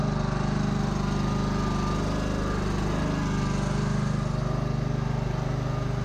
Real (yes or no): yes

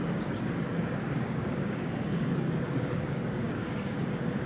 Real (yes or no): no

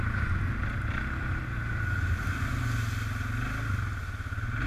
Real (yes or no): yes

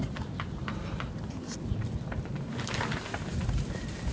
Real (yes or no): yes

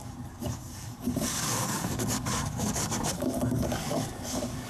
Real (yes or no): no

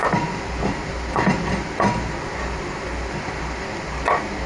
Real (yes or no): yes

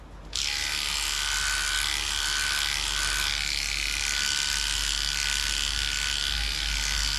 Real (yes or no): yes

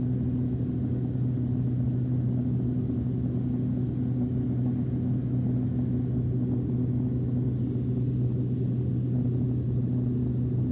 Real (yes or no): yes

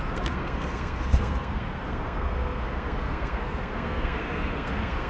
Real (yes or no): no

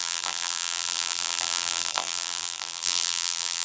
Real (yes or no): no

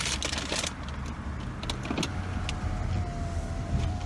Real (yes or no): yes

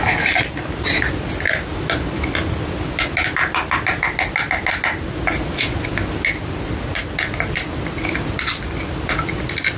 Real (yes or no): yes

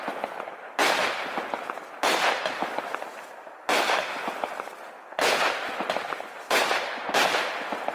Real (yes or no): yes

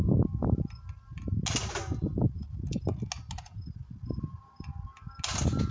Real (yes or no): yes